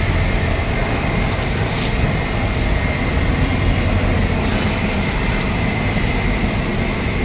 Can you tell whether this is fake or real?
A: real